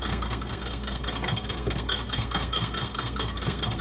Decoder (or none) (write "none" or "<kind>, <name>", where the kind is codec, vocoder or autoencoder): codec, SNAC